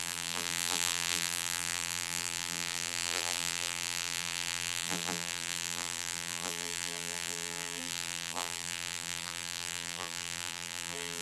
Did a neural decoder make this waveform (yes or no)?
yes